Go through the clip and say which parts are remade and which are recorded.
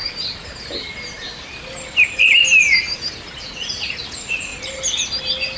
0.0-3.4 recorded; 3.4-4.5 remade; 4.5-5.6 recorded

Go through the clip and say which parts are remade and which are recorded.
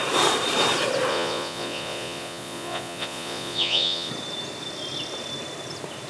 0.0-1.1 recorded; 1.1-4.1 remade; 4.1-6.1 recorded